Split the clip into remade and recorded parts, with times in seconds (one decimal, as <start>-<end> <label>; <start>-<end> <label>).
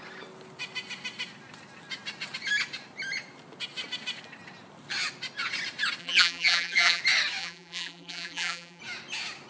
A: 0.0-6.0 recorded; 6.0-7.0 remade; 7.0-7.4 recorded; 7.4-8.8 remade; 8.8-9.5 recorded